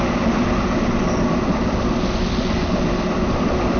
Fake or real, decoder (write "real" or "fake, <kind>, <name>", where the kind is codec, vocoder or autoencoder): real